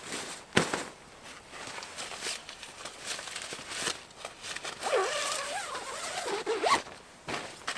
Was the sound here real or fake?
real